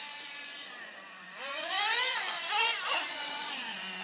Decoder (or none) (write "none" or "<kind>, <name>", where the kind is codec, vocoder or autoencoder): vocoder, Vocos